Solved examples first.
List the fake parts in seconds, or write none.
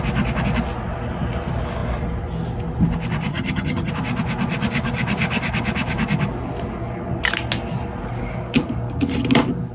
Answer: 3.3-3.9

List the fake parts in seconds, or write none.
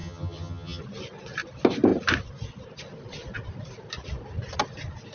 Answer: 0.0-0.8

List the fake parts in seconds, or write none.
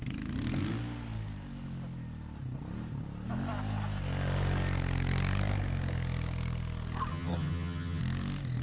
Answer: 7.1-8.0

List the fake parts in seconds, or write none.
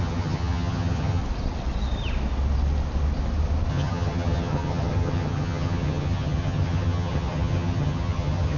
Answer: 0.0-1.2; 3.7-8.6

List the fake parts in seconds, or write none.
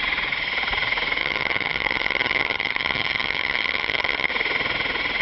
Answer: 1.2-4.3